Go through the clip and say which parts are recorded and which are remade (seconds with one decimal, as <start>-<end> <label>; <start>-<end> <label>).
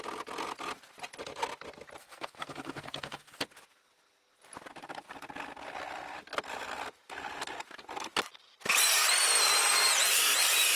0.0-2.0 recorded; 2.0-3.4 remade; 3.4-10.8 recorded